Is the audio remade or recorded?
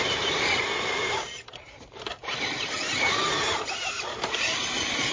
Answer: remade